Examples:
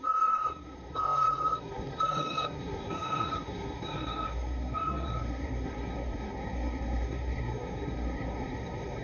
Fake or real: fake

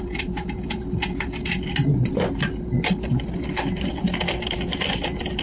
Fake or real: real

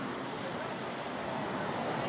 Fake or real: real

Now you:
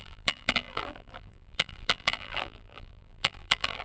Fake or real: fake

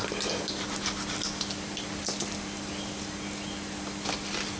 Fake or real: real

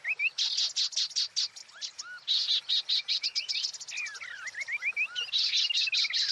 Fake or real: real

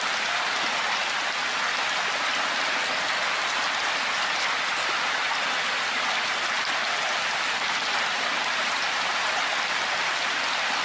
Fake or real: real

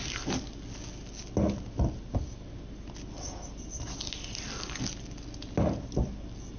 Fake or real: real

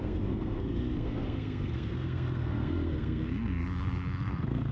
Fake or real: fake